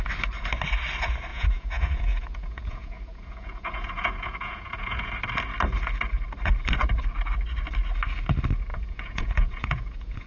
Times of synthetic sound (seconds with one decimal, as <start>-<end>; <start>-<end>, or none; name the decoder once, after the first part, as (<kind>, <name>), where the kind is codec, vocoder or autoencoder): 1.3-5.1 (vocoder, Vocos); 8.7-10.3